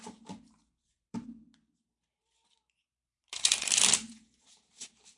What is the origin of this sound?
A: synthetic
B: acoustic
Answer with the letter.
A